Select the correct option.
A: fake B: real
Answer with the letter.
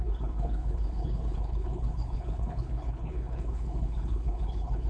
A